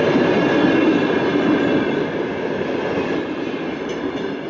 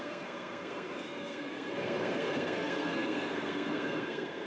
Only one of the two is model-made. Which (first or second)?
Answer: second